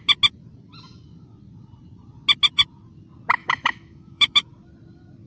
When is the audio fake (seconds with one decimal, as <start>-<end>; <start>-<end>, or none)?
3.4-4.5

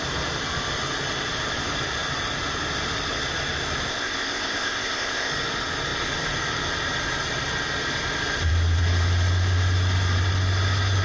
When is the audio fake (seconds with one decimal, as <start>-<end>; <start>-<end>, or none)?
3.9-5.3